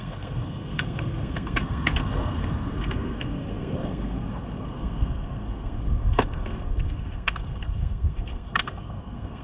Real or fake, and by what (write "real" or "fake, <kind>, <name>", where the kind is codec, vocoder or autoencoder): fake, codec, SNAC